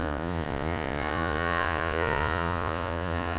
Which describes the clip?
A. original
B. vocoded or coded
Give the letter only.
B